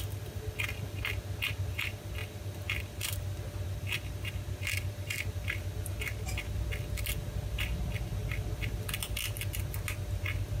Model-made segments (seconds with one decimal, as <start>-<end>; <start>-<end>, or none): none